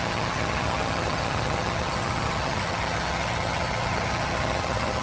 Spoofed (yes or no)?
yes